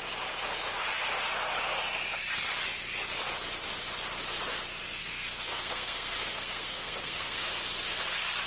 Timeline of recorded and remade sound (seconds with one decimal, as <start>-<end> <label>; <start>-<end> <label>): 0.0-5.0 recorded; 5.0-7.5 remade; 7.5-8.5 recorded

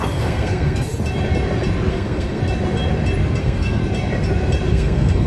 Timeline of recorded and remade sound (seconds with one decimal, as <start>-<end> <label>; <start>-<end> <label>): 0.0-0.9 remade; 0.9-1.9 recorded; 1.9-2.4 remade; 2.4-3.4 recorded; 3.4-3.8 remade; 3.8-4.7 recorded; 4.7-5.3 remade

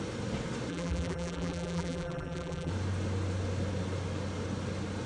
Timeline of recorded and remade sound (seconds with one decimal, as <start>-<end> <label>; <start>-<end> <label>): 0.0-0.7 recorded; 0.7-2.7 remade; 2.7-5.1 recorded

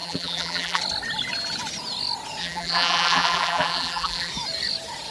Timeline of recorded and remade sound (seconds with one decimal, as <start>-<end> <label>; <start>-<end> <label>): 0.0-0.8 remade; 0.8-2.4 recorded; 2.4-4.3 remade; 4.3-5.1 recorded

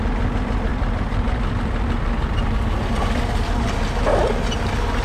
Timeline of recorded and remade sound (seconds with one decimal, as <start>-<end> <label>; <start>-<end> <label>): 0.0-0.7 recorded; 0.7-3.7 remade; 3.7-5.0 recorded

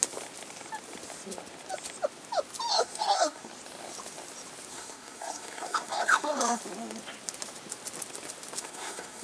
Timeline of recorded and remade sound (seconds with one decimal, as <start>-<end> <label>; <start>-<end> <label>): 0.0-2.7 recorded; 2.7-3.5 remade; 3.5-4.7 recorded; 4.7-6.6 remade; 6.6-8.6 recorded; 8.6-9.2 remade

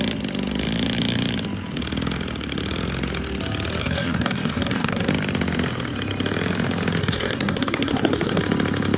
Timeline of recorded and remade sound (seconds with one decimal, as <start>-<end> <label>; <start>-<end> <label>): 0.0-3.8 recorded; 3.8-5.1 remade; 5.1-7.0 recorded; 7.0-8.4 remade; 8.4-9.0 recorded

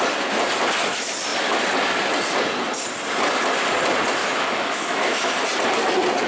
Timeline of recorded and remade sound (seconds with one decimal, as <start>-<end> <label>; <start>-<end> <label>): 0.0-4.2 recorded; 4.2-5.3 remade; 5.3-6.3 recorded